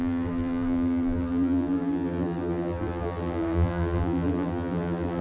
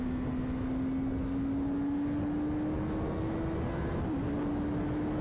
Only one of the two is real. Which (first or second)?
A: second